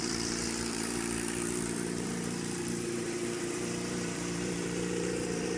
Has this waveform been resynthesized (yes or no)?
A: yes